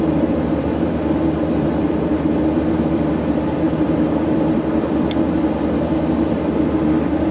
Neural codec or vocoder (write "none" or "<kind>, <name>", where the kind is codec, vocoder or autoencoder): vocoder, BigVGAN v2